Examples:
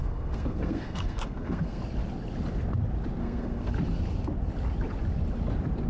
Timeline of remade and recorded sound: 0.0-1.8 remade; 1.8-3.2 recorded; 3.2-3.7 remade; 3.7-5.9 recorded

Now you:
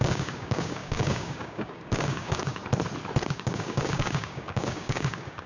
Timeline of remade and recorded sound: 0.0-2.6 remade; 2.6-3.2 recorded; 3.2-5.5 remade

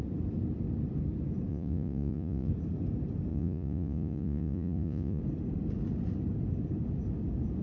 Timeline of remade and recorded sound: 0.0-1.5 recorded; 1.5-2.5 remade; 2.5-3.3 recorded; 3.3-5.2 remade; 5.2-7.6 recorded

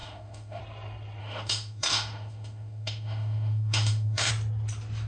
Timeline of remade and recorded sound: 0.0-0.6 remade; 0.6-1.2 recorded; 1.2-4.3 remade; 4.3-5.1 recorded